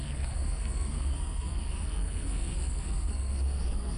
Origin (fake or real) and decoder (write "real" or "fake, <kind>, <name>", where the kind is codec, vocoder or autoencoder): fake, codec, SNAC